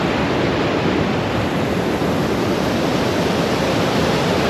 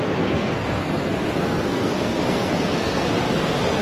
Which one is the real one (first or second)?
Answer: first